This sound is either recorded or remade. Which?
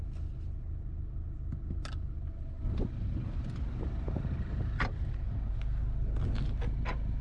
recorded